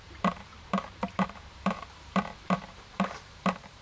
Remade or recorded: remade